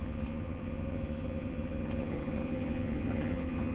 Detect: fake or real fake